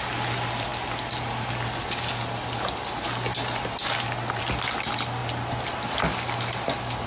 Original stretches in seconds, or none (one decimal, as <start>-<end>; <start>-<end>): 0.0-7.1